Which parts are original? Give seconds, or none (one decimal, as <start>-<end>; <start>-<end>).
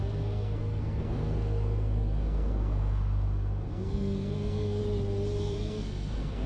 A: 4.8-5.4